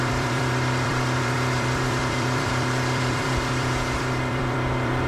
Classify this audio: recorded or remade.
remade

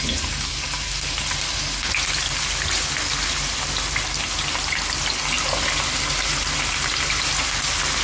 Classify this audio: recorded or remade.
recorded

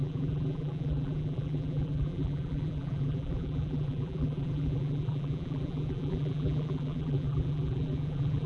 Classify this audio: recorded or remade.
remade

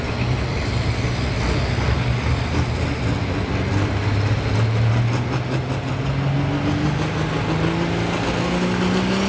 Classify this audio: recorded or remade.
recorded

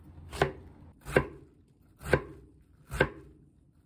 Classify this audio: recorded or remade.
recorded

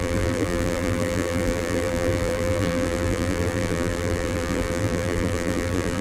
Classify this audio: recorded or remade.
remade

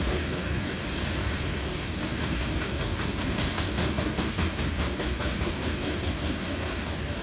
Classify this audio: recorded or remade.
remade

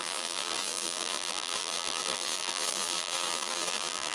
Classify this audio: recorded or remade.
remade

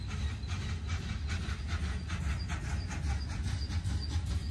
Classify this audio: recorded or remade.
recorded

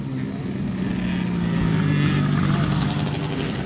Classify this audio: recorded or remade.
recorded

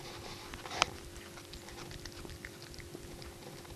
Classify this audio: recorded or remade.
recorded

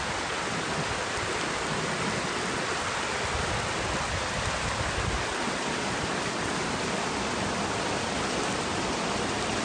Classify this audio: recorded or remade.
recorded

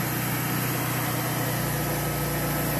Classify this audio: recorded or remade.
recorded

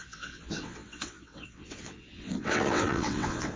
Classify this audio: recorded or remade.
remade